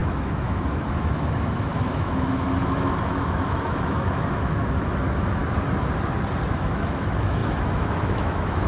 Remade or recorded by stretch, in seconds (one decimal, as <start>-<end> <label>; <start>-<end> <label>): 0.0-5.4 remade; 5.4-6.5 recorded; 6.5-8.7 remade